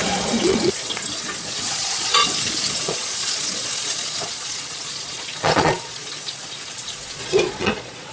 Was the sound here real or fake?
fake